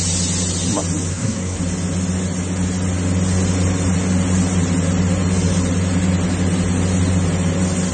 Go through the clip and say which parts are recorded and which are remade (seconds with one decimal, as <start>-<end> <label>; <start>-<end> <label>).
0.0-1.1 recorded; 1.1-1.6 remade; 1.6-7.9 recorded